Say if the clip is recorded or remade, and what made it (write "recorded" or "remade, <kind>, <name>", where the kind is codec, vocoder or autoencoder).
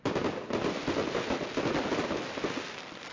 recorded